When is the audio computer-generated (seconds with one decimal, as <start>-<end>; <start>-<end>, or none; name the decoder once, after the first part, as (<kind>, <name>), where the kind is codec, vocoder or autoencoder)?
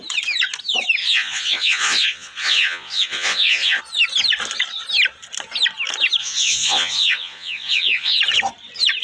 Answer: 1.0-3.8 (vocoder, Vocos); 6.2-8.2